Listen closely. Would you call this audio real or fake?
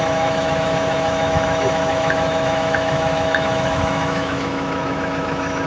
fake